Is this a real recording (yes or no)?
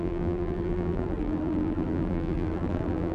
no